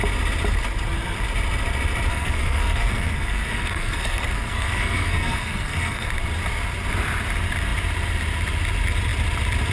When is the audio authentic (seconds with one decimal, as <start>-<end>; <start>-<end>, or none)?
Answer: 0.0-2.1; 6.1-9.7